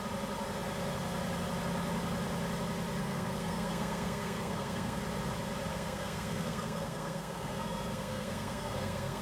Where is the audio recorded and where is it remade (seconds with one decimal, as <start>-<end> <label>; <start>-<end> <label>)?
0.0-3.0 recorded; 3.0-5.0 remade; 5.0-5.7 recorded; 5.7-9.2 remade